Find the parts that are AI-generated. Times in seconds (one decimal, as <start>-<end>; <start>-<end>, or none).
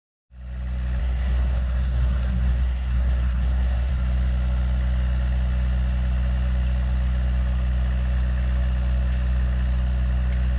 1.0-3.9